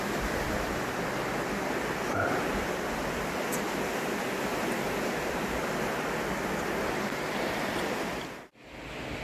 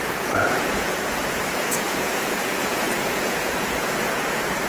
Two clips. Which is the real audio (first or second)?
first